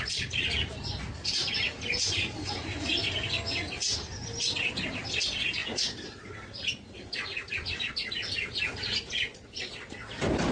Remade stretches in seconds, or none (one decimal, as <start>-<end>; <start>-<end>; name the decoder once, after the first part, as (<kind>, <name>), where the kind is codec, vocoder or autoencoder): 1.4-3.0 (vocoder, BigVGAN v2); 5.6-6.2